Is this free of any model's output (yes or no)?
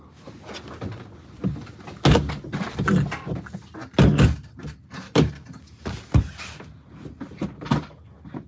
yes